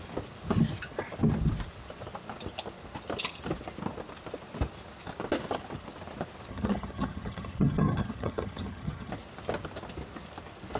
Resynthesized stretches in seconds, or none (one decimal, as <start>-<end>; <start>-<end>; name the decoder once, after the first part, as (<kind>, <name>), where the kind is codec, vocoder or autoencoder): 6.5-9.1 (vocoder, HiFi-GAN)